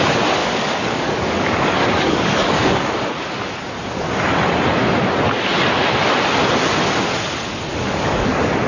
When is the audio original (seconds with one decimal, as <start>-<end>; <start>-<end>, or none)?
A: 0.0-0.4; 3.1-7.7